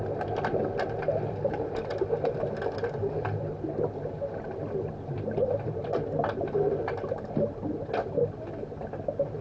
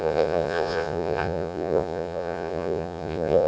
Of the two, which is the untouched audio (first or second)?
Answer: first